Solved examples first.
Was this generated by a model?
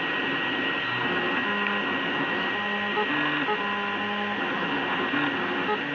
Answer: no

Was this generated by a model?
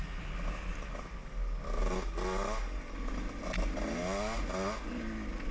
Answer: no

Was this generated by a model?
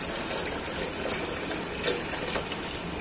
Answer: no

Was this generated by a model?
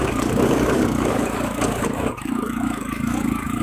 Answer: yes